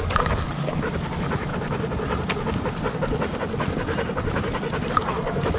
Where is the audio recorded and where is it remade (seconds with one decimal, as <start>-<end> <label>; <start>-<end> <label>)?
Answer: 0.0-1.5 remade; 1.5-4.9 recorded; 4.9-5.6 remade